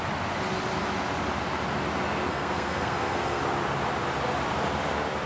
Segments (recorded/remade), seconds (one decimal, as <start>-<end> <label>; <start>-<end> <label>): 0.0-2.3 recorded; 2.3-3.4 remade; 3.4-5.3 recorded